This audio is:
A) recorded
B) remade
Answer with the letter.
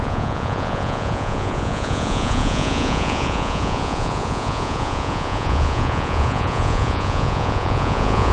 B